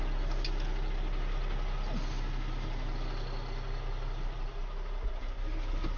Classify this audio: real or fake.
real